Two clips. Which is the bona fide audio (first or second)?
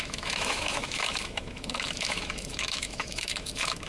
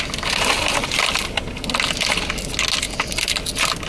second